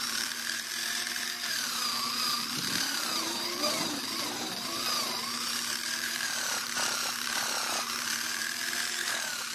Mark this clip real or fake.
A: fake